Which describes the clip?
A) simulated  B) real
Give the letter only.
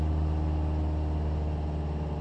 B